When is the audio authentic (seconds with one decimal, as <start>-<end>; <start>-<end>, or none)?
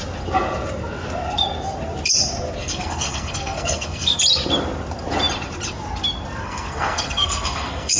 0.0-2.6; 4.2-6.4